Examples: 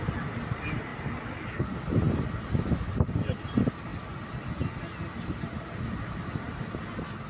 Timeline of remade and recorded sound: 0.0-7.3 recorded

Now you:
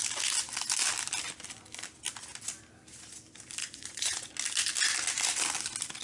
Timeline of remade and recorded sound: 0.0-3.6 recorded; 3.6-4.3 remade; 4.3-6.0 recorded

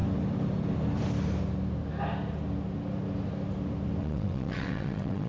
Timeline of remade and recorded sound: 0.0-4.0 recorded; 4.0-5.3 remade

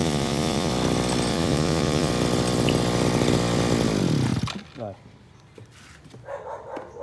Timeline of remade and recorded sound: 0.0-0.7 remade; 0.7-1.3 recorded; 1.3-2.1 remade; 2.1-7.0 recorded